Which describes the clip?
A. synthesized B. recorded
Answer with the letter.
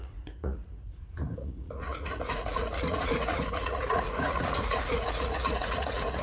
A